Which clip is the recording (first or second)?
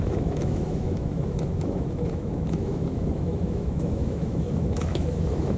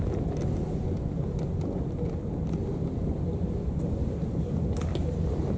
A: second